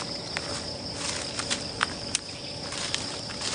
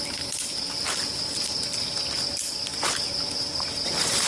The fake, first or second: second